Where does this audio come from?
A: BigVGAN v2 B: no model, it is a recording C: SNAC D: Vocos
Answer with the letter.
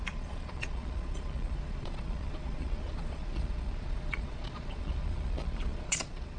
D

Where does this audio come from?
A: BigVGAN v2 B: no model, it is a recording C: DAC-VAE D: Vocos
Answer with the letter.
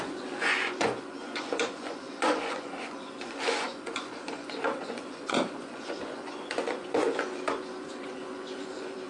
D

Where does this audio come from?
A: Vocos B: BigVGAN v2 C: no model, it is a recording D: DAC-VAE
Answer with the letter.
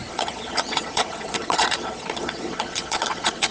A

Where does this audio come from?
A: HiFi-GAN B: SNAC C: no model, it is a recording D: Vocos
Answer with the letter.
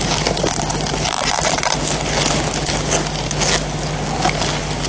C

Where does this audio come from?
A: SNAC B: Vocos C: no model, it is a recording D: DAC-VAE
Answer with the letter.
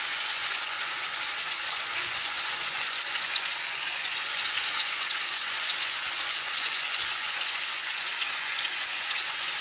B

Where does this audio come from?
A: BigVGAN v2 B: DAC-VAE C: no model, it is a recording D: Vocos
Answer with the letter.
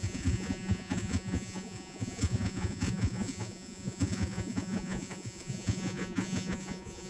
D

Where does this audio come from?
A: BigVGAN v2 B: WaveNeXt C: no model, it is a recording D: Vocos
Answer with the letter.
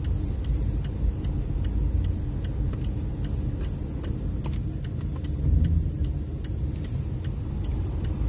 C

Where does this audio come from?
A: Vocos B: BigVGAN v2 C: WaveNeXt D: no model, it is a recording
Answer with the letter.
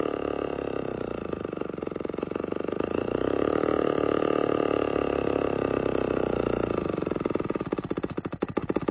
D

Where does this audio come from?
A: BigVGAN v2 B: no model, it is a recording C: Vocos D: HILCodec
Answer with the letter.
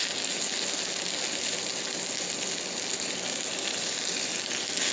B